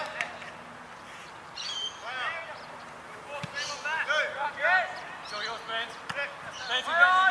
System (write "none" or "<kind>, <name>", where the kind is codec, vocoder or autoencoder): none